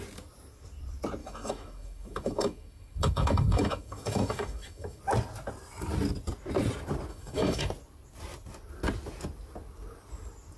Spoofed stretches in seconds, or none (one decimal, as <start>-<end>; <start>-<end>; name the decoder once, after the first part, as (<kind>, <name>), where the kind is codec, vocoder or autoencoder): 1.2-5.0 (autoencoder, DAC-VAE); 7.1-7.6